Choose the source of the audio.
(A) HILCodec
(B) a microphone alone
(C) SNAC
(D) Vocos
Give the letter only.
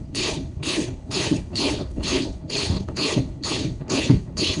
A